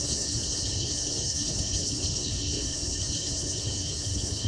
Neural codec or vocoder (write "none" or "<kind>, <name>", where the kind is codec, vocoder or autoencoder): codec, HILCodec